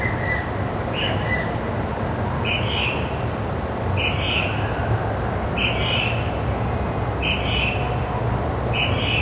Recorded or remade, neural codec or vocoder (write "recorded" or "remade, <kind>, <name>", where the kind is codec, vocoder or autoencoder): recorded